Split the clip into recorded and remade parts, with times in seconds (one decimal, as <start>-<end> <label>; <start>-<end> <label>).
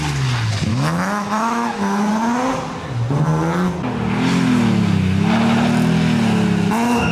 0.0-0.7 recorded; 0.7-2.1 remade; 2.1-7.1 recorded